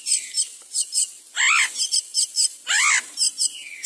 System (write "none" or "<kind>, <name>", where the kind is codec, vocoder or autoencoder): none